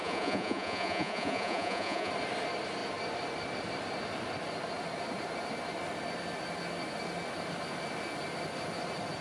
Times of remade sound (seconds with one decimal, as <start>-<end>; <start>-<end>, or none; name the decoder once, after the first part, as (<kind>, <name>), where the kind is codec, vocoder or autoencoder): 0.0-2.1 (vocoder, Vocos)